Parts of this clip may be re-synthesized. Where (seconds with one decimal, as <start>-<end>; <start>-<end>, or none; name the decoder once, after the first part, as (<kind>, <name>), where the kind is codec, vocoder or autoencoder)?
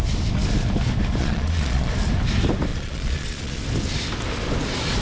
1.2-1.9 (vocoder, Vocos); 2.7-3.6